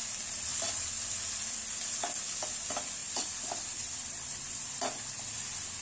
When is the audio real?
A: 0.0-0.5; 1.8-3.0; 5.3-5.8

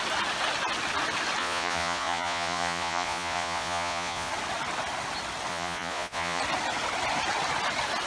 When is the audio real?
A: 0.0-1.4; 4.3-5.5; 6.4-8.1

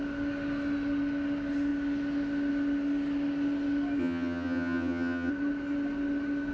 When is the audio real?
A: 0.0-4.0; 5.3-6.5

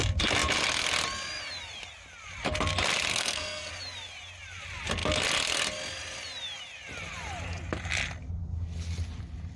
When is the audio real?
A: 0.0-3.1; 3.7-9.6

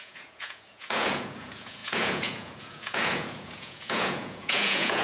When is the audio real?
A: none

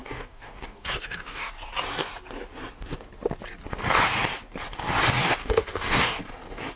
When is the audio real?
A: 1.5-5.4; 6.2-6.8

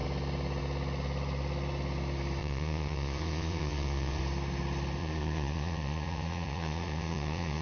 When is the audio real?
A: 0.0-2.4; 4.2-5.0

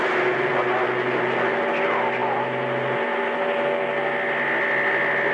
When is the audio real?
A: 0.0-5.3